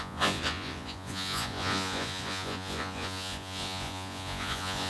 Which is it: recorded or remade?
remade